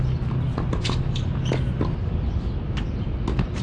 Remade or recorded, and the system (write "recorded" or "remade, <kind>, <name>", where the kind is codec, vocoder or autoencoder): recorded